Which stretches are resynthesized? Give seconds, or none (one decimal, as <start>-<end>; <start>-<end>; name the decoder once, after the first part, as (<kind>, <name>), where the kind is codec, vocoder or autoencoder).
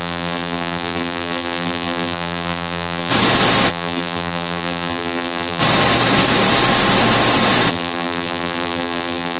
0.0-3.1 (vocoder, BigVGAN v2); 3.7-5.6; 7.7-9.4